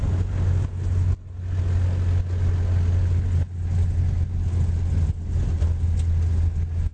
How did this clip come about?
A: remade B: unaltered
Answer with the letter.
B